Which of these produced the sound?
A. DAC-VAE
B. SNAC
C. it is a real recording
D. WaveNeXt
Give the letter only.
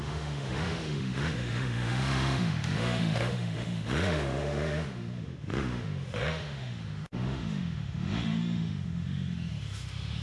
A